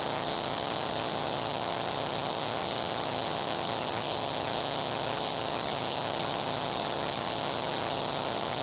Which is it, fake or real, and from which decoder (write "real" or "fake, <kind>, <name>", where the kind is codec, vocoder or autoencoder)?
fake, vocoder, HiFi-GAN